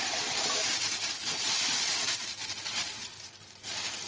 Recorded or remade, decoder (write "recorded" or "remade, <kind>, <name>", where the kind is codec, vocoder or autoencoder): recorded